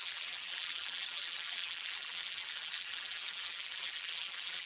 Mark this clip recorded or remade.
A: remade